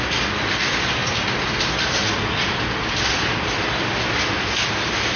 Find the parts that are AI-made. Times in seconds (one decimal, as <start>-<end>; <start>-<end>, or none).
none